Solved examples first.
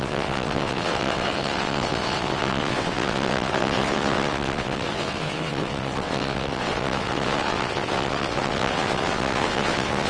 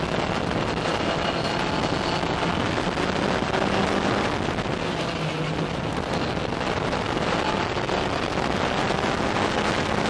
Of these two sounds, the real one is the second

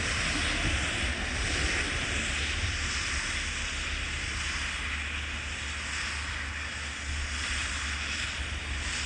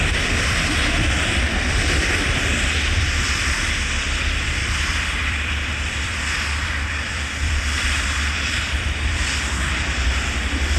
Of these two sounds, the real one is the first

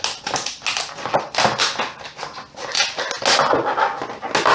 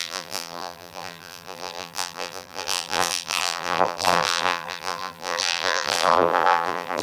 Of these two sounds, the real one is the first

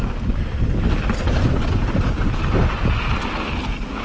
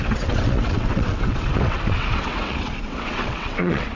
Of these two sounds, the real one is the first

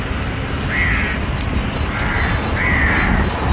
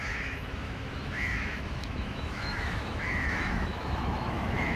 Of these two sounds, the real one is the first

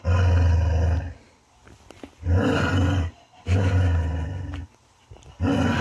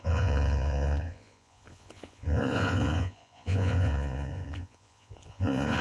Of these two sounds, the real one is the first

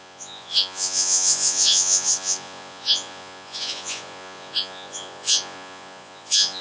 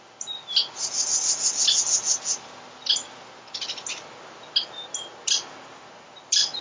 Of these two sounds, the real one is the second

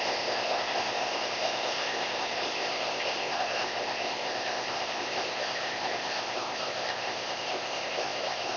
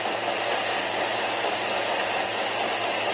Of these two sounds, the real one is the second